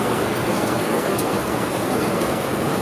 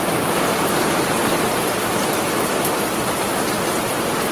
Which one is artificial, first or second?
first